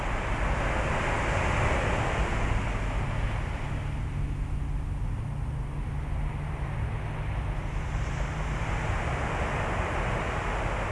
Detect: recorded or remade recorded